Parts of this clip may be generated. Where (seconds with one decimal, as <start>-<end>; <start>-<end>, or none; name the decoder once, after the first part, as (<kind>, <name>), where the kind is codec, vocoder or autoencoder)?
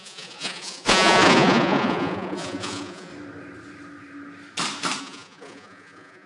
0.0-3.1 (vocoder, Vocos); 5.0-6.3